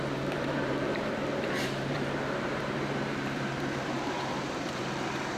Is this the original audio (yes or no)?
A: no